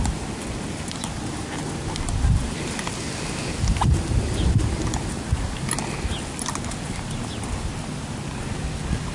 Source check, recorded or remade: recorded